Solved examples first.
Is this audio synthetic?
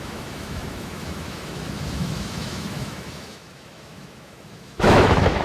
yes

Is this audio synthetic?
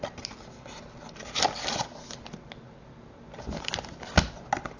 no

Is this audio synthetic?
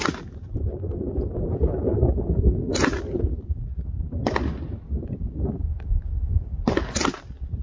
no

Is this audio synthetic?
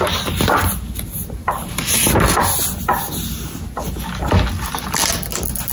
no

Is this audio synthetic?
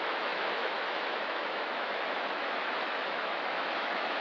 yes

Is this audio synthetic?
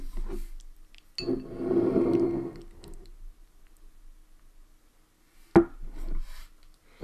no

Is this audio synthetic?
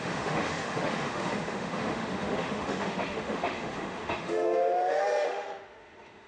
yes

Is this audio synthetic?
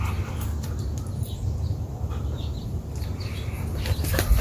no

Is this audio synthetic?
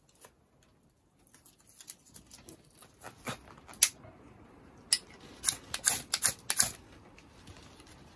no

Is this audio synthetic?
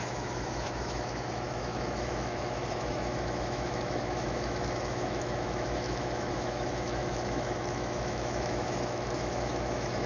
yes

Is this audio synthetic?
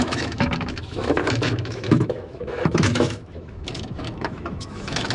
yes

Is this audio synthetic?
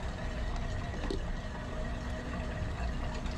no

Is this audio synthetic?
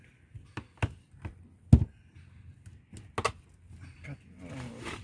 no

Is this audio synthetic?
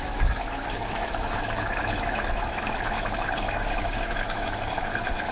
yes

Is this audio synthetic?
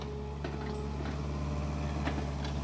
no